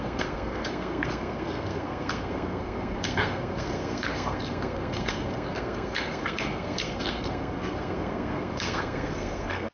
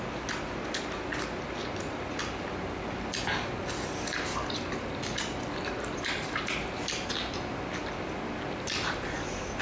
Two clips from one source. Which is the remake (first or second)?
first